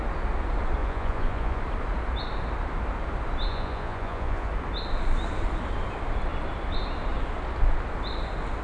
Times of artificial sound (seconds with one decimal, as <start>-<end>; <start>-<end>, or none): 0.8-1.6; 3.5-4.5